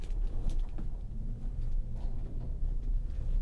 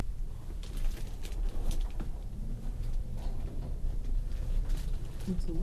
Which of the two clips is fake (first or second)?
second